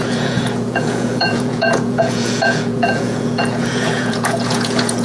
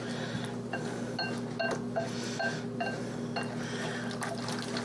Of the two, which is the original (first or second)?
second